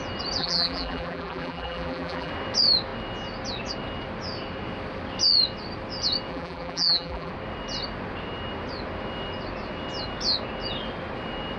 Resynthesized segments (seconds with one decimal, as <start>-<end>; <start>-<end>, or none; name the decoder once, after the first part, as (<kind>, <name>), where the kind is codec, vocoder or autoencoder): 0.4-2.3 (vocoder, BigVGAN v2); 6.3-7.3